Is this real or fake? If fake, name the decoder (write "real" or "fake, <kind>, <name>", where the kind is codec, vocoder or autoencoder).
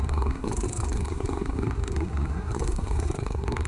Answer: fake, codec, SNAC